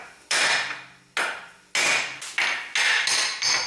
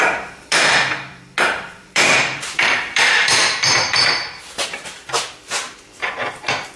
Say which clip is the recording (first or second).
first